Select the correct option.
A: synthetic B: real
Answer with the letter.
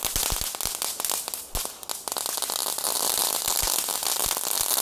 B